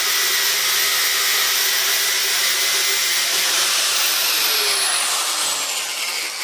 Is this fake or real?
real